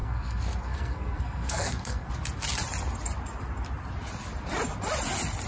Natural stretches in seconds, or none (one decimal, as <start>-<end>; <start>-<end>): 2.1-5.5